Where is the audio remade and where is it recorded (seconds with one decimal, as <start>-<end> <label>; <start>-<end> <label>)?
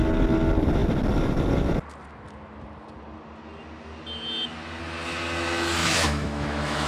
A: 0.0-5.8 recorded; 5.8-6.9 remade